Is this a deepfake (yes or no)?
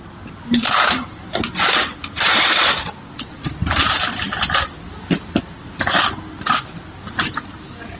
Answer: no